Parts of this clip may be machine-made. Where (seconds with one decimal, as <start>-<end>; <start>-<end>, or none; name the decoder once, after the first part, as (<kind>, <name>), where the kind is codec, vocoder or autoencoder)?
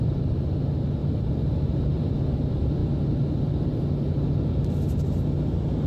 1.0-2.2 (vocoder, BigVGAN v2)